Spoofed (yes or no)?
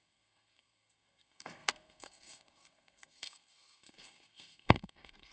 yes